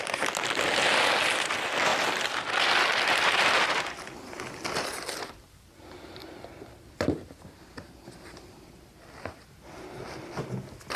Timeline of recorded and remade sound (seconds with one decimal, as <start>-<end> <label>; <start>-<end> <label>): 0.0-11.0 recorded